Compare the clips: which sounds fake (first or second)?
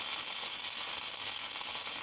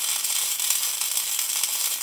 second